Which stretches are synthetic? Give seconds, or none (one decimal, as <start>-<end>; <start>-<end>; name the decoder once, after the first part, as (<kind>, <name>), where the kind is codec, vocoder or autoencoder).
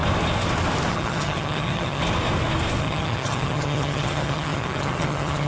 0.9-2.0 (vocoder, HiFi-GAN); 2.8-5.5